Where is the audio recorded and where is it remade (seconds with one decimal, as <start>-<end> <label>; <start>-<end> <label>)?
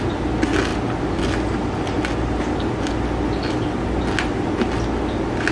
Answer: 0.0-5.5 recorded